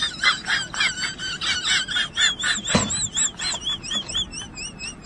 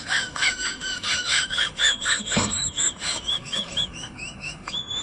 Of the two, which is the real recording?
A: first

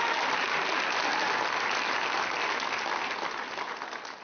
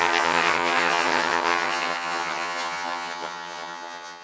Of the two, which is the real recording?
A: first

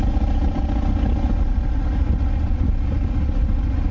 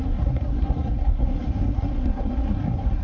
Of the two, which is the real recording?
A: first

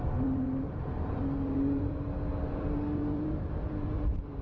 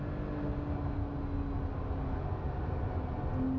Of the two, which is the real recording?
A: second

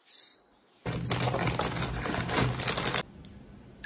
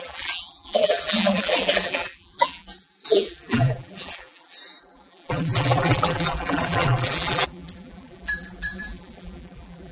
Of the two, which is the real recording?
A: first